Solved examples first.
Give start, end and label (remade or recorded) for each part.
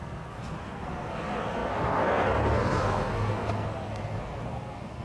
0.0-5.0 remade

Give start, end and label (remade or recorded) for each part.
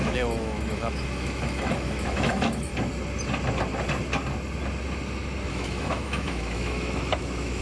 0.0-2.7 remade; 2.7-5.5 recorded; 5.5-7.6 remade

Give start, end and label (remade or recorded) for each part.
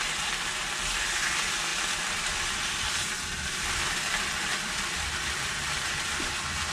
0.0-6.7 remade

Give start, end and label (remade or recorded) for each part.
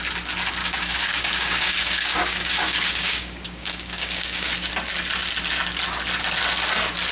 0.0-0.6 recorded; 0.6-4.7 remade; 4.7-7.1 recorded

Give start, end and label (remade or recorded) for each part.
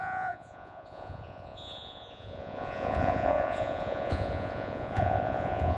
0.0-5.8 remade